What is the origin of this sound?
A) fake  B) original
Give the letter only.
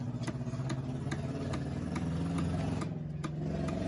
B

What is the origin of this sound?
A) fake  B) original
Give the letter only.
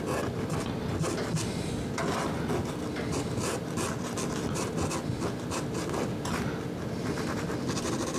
B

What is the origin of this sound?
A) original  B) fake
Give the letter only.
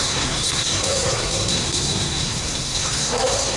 B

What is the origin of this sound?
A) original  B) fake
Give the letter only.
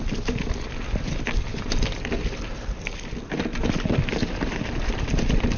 A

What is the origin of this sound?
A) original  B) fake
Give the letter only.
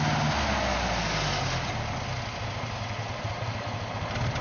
A